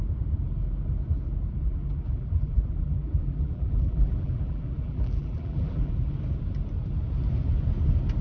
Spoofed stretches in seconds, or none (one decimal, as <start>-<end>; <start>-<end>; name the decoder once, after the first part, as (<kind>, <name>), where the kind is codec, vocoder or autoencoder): 1.7-5.9 (vocoder, BigVGAN v2)